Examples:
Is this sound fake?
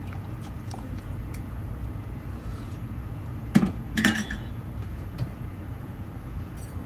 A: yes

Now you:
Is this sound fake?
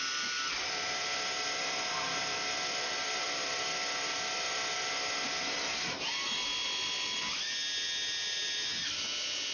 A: yes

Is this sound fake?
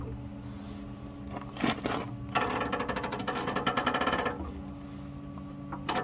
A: no